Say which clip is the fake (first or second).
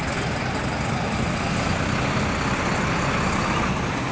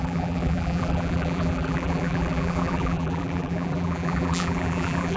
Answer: second